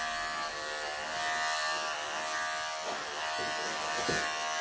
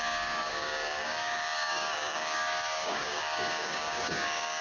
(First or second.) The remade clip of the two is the second